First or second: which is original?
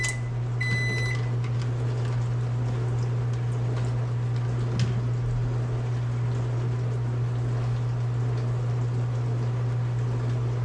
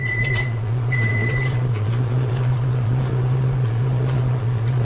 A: first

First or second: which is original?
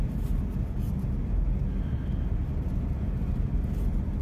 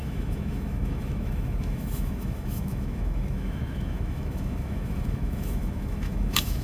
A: first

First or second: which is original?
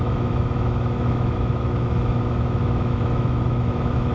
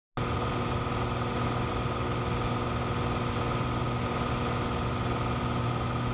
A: second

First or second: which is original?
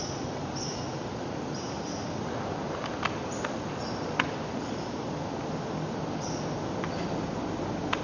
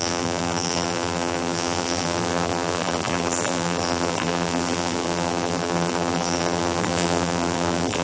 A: first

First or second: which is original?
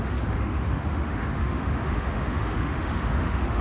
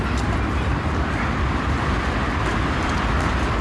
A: second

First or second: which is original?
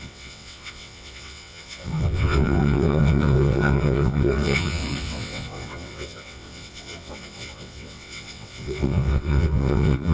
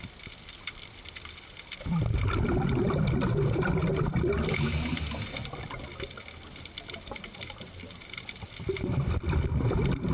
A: second